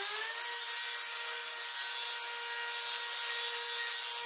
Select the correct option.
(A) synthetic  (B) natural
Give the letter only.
B